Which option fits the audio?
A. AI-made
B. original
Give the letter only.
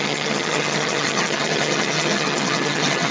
A